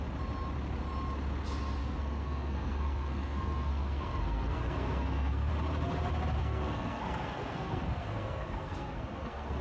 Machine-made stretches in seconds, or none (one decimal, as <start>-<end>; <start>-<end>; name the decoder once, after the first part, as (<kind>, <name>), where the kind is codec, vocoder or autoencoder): 1.8-5.5 (codec, SNAC); 6.4-9.6